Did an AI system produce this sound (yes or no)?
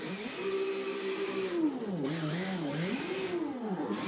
no